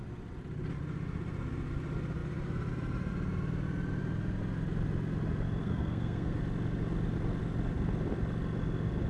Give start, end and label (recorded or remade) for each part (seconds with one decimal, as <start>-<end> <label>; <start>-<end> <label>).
0.0-5.6 recorded; 5.6-6.4 remade; 6.4-9.1 recorded